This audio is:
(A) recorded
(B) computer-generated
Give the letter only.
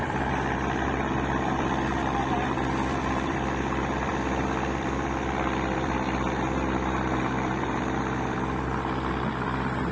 B